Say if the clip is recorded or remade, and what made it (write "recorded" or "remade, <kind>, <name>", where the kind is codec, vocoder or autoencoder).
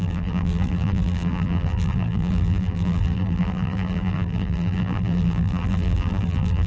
remade, vocoder, BigVGAN v2